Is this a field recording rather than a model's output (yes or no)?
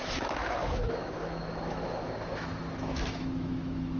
no